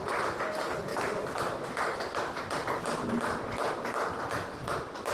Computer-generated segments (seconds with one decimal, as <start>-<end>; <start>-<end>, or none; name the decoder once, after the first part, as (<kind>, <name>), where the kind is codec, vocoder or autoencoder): none